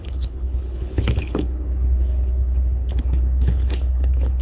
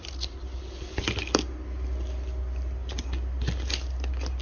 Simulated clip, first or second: first